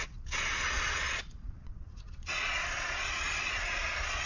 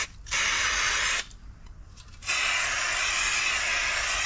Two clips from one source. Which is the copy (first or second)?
first